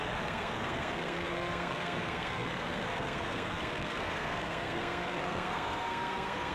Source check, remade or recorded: remade